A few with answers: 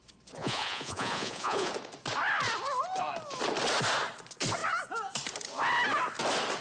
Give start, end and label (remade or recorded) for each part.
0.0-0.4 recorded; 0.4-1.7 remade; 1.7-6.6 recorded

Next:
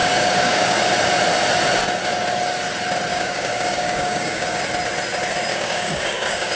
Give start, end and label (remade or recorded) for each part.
0.0-0.8 remade; 0.8-3.1 recorded; 3.1-4.6 remade; 4.6-5.5 recorded; 5.5-6.6 remade

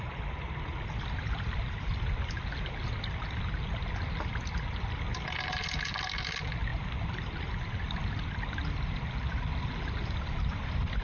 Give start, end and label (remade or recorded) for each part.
0.0-11.0 recorded

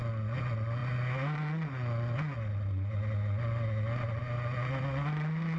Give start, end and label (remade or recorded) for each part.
0.0-5.6 recorded

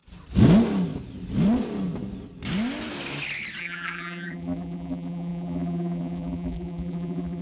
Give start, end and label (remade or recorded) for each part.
0.0-3.6 recorded; 3.6-7.4 remade

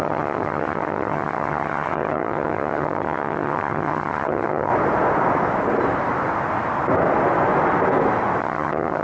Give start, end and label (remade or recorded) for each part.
0.0-4.7 remade; 4.7-8.4 recorded; 8.4-9.0 remade

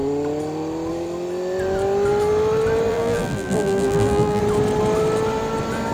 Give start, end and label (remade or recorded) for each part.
0.0-2.9 recorded; 2.9-4.4 remade; 4.4-5.9 recorded